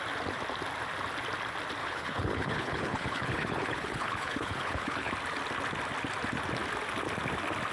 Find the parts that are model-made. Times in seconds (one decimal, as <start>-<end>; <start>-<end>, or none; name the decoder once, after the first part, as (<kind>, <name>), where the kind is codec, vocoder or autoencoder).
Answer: 1.8-5.1 (codec, HILCodec)